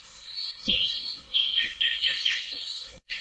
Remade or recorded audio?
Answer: remade